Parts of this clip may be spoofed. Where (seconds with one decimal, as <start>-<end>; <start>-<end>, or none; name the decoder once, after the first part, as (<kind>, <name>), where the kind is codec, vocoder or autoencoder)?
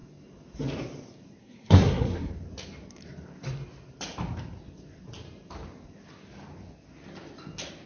1.4-2.3 (codec, SNAC)